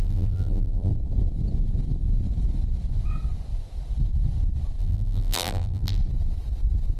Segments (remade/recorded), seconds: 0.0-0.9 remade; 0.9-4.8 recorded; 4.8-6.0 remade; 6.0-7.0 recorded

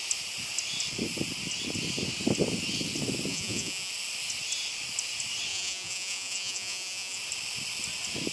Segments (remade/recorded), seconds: 0.0-3.3 recorded; 3.3-3.9 remade; 3.9-5.5 recorded; 5.5-7.2 remade; 7.2-8.3 recorded

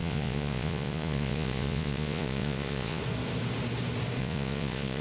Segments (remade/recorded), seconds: 0.0-3.0 remade; 3.0-4.2 recorded; 4.2-5.0 remade

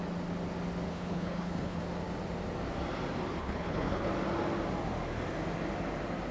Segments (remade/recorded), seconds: 0.0-0.9 recorded; 0.9-1.8 remade; 1.8-3.4 recorded; 3.4-4.1 remade; 4.1-6.3 recorded